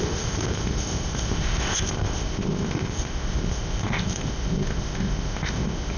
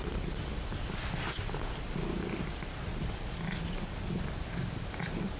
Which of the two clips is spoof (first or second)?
first